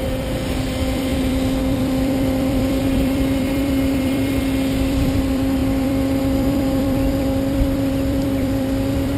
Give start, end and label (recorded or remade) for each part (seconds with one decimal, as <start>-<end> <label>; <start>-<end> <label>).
0.0-9.2 remade